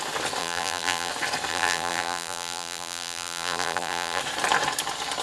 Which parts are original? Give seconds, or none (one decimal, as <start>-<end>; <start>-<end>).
0.0-0.4; 1.1-1.5; 4.2-5.2